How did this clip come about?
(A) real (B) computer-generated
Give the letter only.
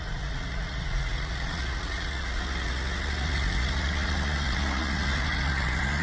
B